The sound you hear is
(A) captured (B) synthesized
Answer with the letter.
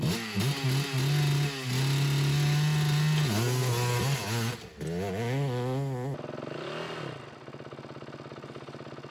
A